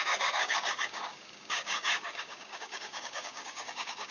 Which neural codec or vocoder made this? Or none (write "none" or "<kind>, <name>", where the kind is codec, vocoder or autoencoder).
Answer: codec, DAC